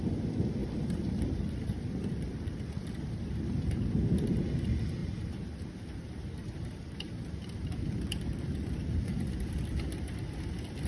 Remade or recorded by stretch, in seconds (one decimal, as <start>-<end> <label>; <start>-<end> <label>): 0.0-0.6 recorded; 0.6-4.4 remade; 4.4-5.0 recorded; 5.0-9.5 remade; 9.5-10.9 recorded